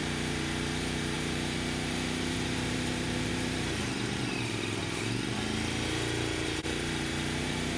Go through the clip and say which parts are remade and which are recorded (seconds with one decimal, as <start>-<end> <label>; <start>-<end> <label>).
0.0-4.8 remade; 4.8-6.6 recorded; 6.6-7.8 remade

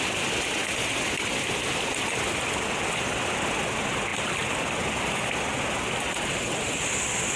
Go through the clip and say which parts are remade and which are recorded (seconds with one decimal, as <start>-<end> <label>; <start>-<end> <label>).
0.0-7.4 recorded

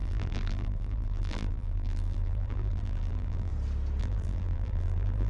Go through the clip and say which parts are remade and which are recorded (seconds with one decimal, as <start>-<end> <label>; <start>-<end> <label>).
0.0-3.5 remade; 3.5-4.0 recorded; 4.0-5.3 remade

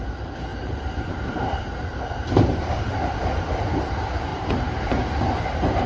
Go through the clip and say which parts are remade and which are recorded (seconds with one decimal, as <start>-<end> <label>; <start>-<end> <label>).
0.0-0.5 recorded; 0.5-3.2 remade; 3.2-4.3 recorded; 4.3-5.9 remade

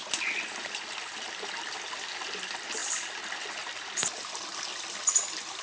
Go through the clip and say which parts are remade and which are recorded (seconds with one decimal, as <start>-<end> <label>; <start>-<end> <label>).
0.0-4.7 recorded; 4.7-5.6 remade

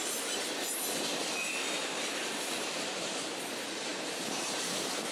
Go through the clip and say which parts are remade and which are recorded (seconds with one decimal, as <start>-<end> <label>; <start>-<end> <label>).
0.0-1.6 recorded; 1.6-3.4 remade; 3.4-3.9 recorded; 3.9-4.5 remade; 4.5-5.1 recorded